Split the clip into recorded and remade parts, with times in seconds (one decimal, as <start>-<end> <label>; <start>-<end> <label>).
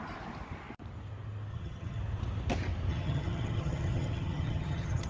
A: 0.0-1.5 recorded; 1.5-2.0 remade; 2.0-2.9 recorded; 2.9-5.1 remade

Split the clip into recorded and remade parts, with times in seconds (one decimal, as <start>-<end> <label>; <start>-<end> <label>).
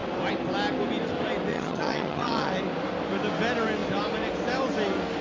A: 0.0-1.5 recorded; 1.5-2.5 remade; 2.5-5.2 recorded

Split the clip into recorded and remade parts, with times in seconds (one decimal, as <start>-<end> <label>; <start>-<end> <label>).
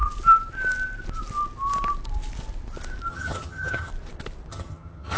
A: 0.0-3.1 recorded; 3.1-3.9 remade; 3.9-4.5 recorded; 4.5-5.2 remade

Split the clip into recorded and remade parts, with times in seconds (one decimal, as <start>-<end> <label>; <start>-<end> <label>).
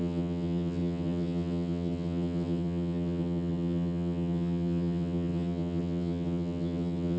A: 0.0-7.2 remade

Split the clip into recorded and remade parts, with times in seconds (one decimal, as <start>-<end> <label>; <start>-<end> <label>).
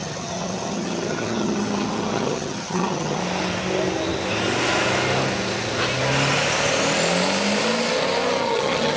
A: 0.0-3.2 remade; 3.2-8.4 recorded; 8.4-9.0 remade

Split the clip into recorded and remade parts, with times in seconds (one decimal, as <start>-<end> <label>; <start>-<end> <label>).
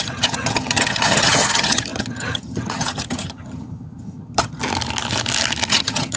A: 0.0-4.6 remade; 4.6-5.7 recorded; 5.7-6.2 remade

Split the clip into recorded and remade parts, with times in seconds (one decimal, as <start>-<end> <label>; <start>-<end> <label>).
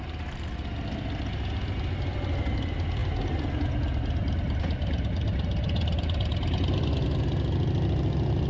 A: 0.0-8.5 recorded